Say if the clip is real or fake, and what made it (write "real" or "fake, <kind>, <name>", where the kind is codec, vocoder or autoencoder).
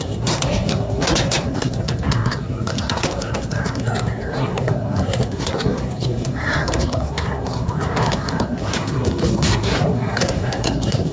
fake, codec, SNAC